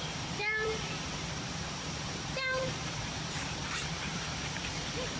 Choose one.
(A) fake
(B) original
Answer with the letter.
A